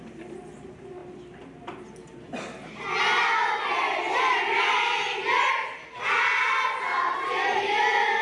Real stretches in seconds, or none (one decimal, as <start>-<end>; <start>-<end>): 0.0-8.2